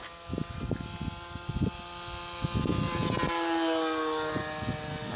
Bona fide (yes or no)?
yes